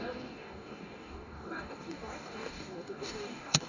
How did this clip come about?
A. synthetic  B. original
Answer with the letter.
A